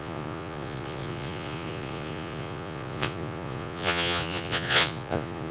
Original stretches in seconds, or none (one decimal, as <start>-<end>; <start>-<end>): none